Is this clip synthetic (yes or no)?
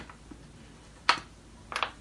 no